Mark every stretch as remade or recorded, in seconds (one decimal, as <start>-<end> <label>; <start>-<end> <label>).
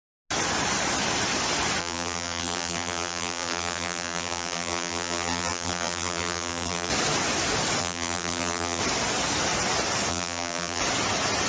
0.0-1.8 recorded; 1.8-6.9 remade; 6.9-7.8 recorded; 7.8-8.8 remade; 8.8-10.1 recorded; 10.1-10.8 remade; 10.8-11.5 recorded